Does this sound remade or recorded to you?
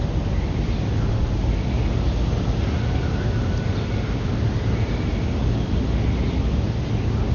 recorded